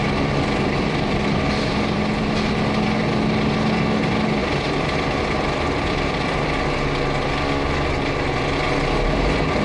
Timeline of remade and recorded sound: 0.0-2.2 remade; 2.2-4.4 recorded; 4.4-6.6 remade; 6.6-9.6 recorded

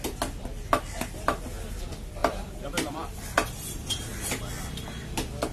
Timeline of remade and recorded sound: 0.0-2.2 recorded; 2.2-4.4 remade; 4.4-5.5 recorded

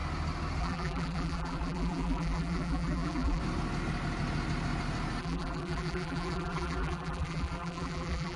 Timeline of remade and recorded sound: 0.0-0.6 recorded; 0.6-3.4 remade; 3.4-5.2 recorded; 5.2-8.4 remade

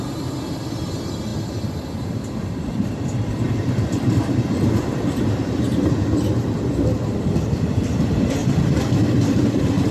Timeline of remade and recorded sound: 0.0-1.3 recorded; 1.3-4.9 remade; 4.9-8.4 recorded; 8.4-9.4 remade; 9.4-9.9 recorded

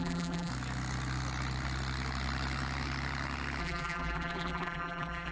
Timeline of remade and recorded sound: 0.0-0.5 remade; 0.5-3.6 recorded; 3.6-5.3 remade